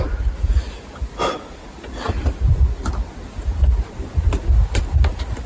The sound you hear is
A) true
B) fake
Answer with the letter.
A